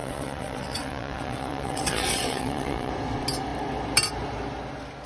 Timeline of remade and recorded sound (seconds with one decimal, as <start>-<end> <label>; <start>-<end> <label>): 0.0-2.9 remade; 2.9-5.1 recorded